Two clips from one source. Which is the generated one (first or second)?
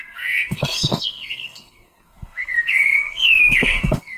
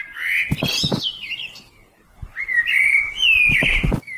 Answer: first